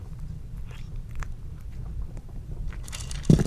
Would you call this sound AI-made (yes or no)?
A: yes